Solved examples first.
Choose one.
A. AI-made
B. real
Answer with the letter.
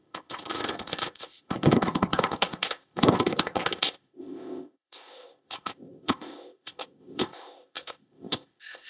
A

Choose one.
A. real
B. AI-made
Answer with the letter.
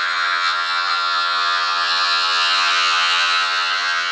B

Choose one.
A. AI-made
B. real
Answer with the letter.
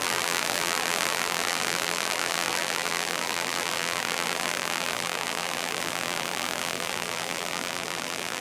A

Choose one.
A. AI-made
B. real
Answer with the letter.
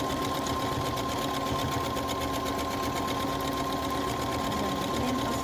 B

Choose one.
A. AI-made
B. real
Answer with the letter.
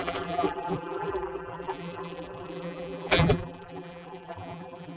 A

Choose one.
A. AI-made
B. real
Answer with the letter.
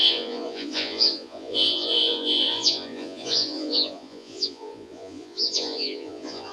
A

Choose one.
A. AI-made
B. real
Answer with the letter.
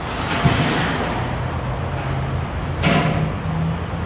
B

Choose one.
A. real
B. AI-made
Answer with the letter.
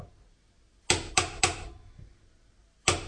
A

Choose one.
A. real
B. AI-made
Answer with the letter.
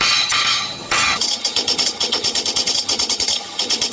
B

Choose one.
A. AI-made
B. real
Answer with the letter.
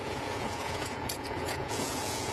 A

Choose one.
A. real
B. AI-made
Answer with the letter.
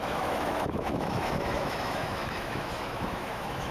B